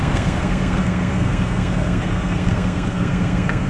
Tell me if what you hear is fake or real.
fake